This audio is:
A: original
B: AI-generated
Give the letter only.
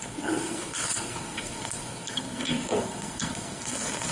B